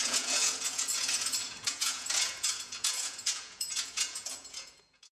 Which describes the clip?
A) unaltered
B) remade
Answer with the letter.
B